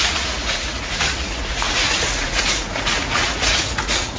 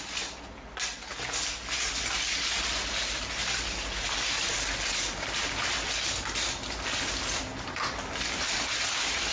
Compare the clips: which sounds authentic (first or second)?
second